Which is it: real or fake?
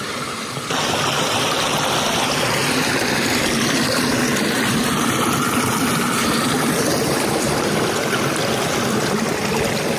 real